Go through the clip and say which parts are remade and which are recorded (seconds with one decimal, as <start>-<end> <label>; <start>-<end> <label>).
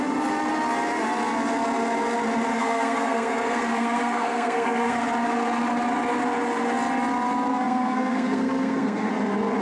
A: 0.0-2.5 recorded; 2.5-5.1 remade; 5.1-7.5 recorded; 7.5-9.1 remade; 9.1-9.6 recorded